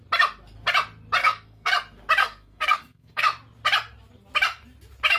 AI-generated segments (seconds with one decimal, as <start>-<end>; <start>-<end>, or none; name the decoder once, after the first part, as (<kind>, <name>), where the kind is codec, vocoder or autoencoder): 1.2-1.7 (codec, SNAC); 2.2-3.2